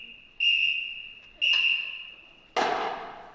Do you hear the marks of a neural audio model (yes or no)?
no